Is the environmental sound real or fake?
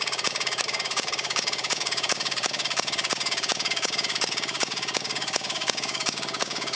fake